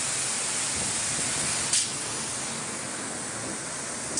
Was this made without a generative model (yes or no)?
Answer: yes